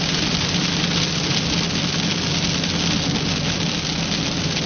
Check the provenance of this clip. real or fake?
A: real